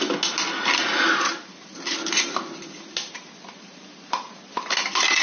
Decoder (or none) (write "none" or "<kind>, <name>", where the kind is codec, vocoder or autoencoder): none